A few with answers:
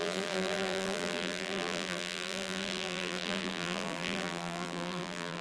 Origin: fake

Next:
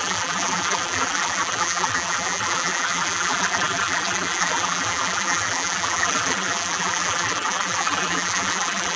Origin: fake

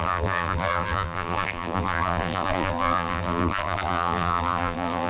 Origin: fake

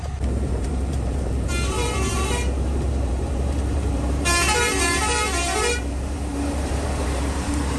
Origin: fake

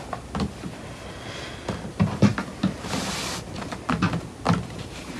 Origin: real